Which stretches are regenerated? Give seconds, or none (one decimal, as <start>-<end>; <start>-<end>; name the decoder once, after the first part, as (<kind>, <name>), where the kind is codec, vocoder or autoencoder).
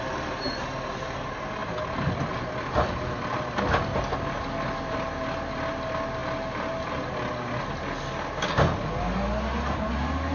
none